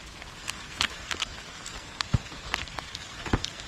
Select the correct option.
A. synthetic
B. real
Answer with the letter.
A